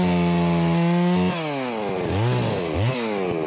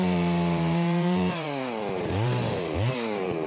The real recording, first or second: first